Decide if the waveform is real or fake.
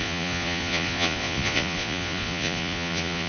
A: fake